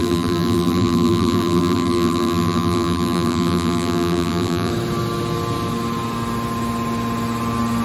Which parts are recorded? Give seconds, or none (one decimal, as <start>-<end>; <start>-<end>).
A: 4.7-7.8